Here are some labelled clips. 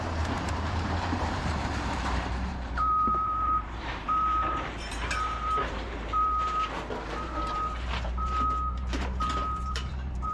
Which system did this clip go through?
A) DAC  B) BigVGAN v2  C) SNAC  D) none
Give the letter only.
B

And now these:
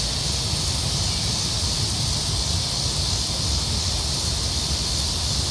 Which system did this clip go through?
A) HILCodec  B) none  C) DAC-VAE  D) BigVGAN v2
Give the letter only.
B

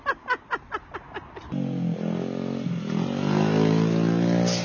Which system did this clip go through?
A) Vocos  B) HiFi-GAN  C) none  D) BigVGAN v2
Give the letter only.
C